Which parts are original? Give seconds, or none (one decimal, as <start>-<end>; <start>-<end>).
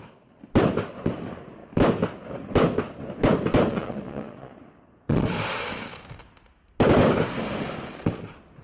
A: 0.0-3.7; 5.3-8.6